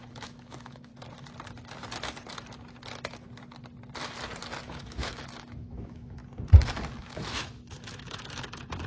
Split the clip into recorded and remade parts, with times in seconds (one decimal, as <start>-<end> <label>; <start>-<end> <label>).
0.0-0.9 remade; 0.9-4.6 recorded; 4.6-6.2 remade; 6.2-7.0 recorded; 7.0-8.9 remade